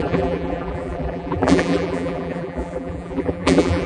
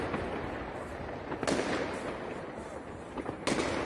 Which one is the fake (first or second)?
first